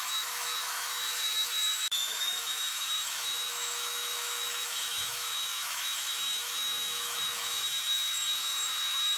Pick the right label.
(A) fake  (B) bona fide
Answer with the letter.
A